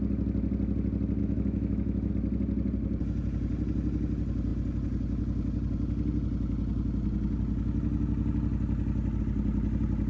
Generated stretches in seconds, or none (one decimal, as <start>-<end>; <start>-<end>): 1.2-2.1